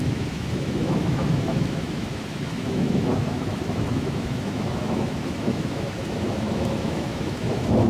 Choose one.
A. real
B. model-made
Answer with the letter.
B